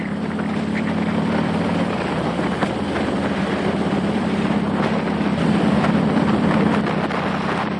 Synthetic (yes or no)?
yes